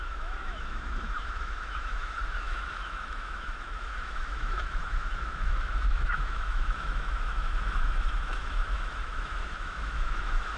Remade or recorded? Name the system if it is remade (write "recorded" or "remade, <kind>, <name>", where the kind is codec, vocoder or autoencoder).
remade, autoencoder, DAC-VAE